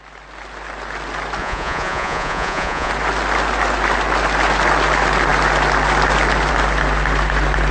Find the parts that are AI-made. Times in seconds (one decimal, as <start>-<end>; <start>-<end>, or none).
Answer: 1.4-2.9